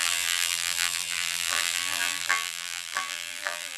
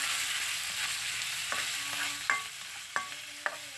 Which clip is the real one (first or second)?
second